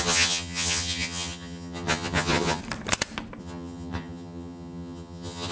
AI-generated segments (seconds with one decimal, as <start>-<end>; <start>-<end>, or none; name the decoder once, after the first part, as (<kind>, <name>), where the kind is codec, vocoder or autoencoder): 0.0-2.6 (vocoder, HiFi-GAN); 3.4-5.5